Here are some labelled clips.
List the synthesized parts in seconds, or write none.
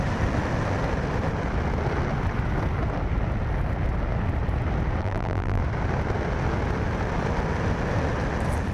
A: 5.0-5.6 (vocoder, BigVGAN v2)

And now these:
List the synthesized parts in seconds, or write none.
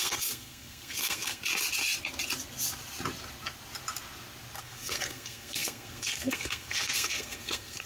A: 0.0-1.4 (codec, SNAC); 4.6-7.9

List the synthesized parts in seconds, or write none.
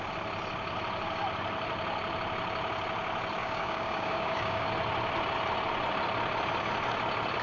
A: 3.4-4.7 (codec, DAC)